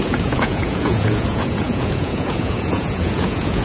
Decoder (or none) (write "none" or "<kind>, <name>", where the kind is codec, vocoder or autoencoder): vocoder, Vocos